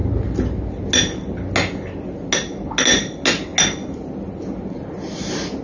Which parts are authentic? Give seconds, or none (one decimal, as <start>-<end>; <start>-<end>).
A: 0.0-5.6